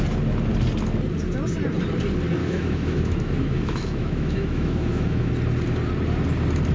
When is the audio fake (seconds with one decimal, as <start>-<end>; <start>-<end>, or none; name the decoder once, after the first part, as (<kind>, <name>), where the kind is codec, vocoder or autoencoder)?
2.4-5.3 (autoencoder, DAC-VAE)